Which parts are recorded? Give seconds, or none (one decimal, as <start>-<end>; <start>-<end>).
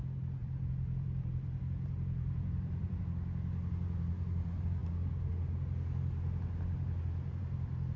0.0-0.4; 3.0-8.0